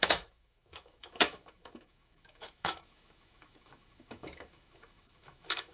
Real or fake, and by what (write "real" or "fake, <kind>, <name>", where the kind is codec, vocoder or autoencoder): fake, autoencoder, DAC-VAE